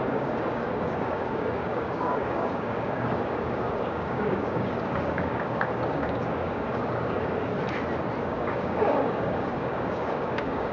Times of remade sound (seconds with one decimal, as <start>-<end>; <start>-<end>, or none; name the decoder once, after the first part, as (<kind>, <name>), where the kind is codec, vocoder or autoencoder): 0.0-7.5 (codec, DAC); 8.2-10.7

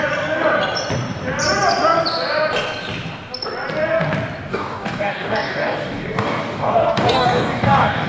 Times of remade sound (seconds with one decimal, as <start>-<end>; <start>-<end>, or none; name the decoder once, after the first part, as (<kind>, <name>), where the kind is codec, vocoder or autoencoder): 4.5-8.1 (codec, DAC)

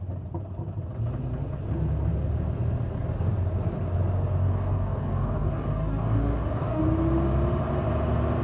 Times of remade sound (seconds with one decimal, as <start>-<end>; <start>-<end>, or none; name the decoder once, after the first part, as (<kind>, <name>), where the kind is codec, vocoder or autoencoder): 4.4-6.8 (codec, DAC)

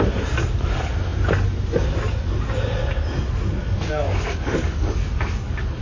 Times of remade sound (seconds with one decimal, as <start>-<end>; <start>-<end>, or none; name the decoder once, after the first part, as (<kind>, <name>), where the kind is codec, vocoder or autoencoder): 3.6-5.8 (codec, DAC)

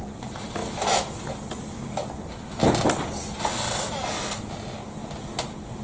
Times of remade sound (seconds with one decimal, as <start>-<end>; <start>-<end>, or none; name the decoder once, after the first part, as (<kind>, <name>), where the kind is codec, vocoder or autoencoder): none

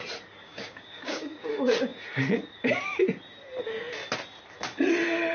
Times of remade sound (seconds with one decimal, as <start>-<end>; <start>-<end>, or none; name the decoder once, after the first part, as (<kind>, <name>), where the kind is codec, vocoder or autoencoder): 0.4-1.4 (codec, DAC)